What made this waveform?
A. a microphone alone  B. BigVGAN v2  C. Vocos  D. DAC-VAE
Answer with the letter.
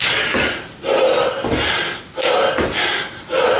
A